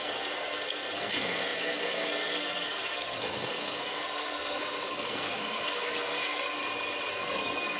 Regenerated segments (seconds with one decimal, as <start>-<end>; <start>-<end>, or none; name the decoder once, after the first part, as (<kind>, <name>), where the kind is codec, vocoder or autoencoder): 0.0-6.6 (codec, SNAC); 7.1-7.8